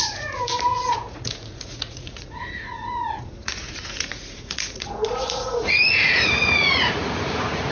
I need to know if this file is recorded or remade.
remade